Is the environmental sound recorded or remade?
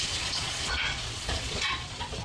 remade